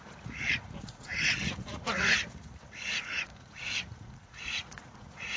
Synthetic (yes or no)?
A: yes